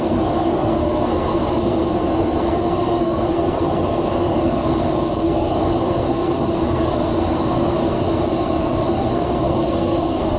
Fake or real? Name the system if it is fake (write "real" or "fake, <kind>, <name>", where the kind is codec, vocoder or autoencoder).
fake, codec, SNAC